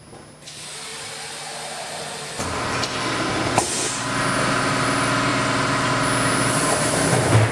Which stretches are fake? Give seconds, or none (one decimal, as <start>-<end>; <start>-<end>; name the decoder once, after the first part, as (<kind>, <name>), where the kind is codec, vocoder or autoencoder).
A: 5.3-5.9 (vocoder, BigVGAN v2)